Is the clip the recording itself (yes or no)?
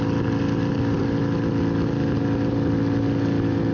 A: yes